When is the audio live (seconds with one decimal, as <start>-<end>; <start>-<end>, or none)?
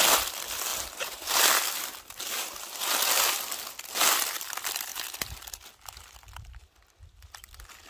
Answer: 0.7-1.4